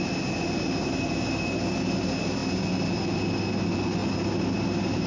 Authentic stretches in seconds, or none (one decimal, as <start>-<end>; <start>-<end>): 0.0-5.1